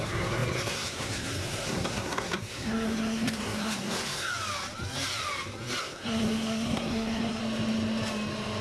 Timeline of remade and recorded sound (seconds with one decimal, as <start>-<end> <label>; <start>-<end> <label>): 0.0-4.3 remade; 4.3-5.8 recorded; 5.8-7.4 remade; 7.4-8.6 recorded